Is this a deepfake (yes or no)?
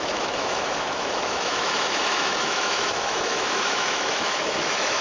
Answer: yes